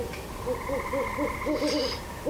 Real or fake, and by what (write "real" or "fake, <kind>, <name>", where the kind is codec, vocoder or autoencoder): real